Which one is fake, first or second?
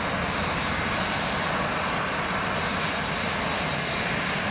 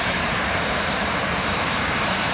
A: second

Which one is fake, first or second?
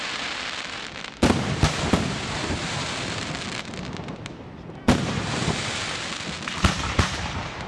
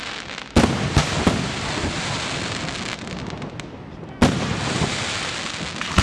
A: first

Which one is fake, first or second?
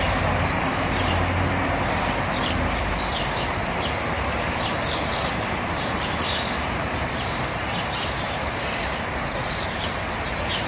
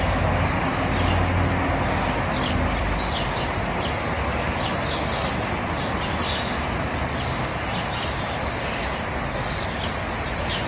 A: first